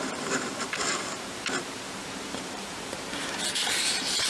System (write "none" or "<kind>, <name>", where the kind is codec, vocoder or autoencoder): vocoder, BigVGAN v2